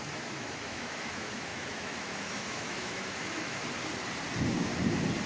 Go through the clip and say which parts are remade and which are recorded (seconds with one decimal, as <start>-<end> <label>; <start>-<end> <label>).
0.0-3.6 remade; 3.6-5.3 recorded